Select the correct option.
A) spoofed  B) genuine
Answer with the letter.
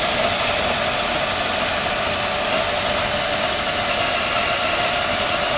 B